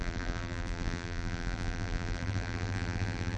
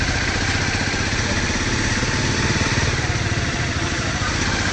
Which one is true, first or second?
second